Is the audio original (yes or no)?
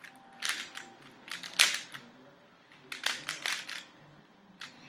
yes